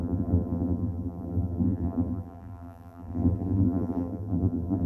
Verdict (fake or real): fake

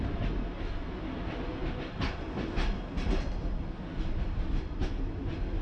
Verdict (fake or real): real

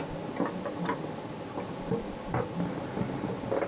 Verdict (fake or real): fake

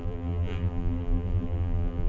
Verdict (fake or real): fake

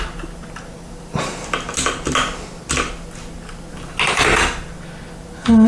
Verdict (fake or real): real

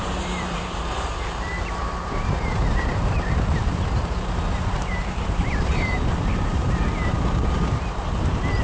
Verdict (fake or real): fake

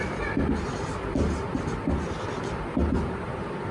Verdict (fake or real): fake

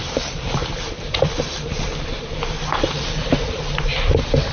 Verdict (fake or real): fake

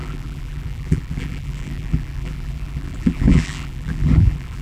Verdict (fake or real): fake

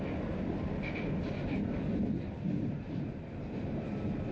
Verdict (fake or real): real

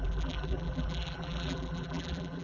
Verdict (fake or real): fake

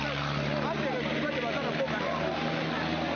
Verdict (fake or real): real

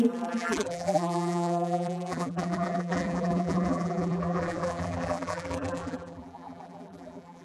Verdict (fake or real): fake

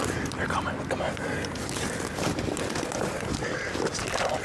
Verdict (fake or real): real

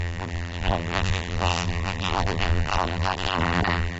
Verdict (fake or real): fake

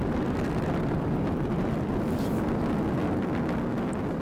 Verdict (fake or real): fake